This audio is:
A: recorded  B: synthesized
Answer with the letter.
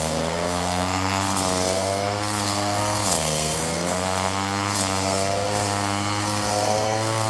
B